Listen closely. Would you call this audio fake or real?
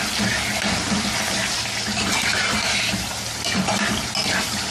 real